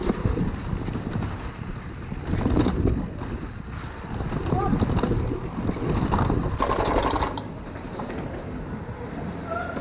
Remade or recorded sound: recorded